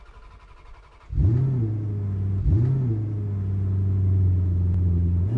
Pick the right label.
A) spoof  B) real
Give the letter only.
B